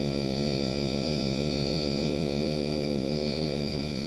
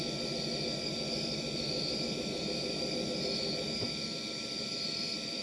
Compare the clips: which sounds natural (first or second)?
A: second